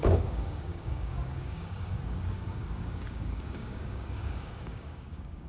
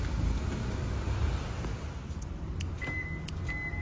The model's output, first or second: first